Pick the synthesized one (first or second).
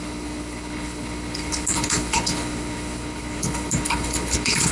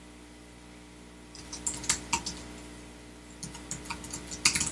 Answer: first